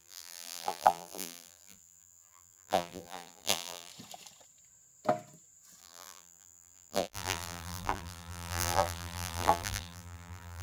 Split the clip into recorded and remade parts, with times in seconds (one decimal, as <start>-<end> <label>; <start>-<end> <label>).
0.0-3.9 remade; 3.9-5.8 recorded; 5.8-10.6 remade